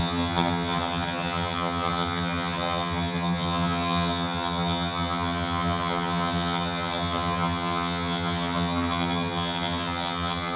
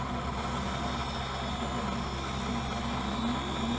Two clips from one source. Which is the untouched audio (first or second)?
second